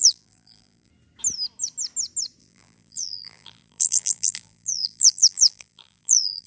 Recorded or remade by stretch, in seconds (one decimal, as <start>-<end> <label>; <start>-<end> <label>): 0.0-0.9 remade; 0.9-2.4 recorded; 2.4-6.5 remade